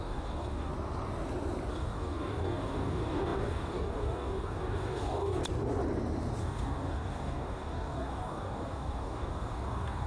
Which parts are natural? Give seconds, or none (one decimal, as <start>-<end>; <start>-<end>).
0.7-1.7; 5.4-6.4